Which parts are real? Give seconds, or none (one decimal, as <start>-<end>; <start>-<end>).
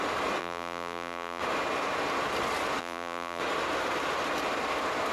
0.0-0.4; 1.4-2.8; 3.4-5.1